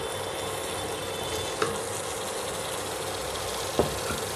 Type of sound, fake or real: real